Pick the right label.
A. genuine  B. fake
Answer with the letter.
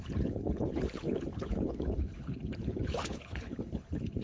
B